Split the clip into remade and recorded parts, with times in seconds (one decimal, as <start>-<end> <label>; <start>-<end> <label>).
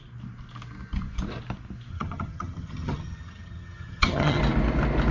0.0-1.9 recorded; 1.9-4.4 remade; 4.4-5.1 recorded